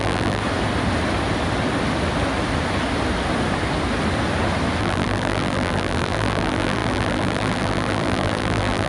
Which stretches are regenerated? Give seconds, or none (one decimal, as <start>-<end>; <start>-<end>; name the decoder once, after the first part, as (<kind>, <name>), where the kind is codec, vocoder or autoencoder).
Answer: 0.0-0.4 (vocoder, BigVGAN v2); 4.8-8.9